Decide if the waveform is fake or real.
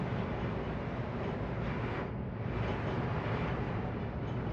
real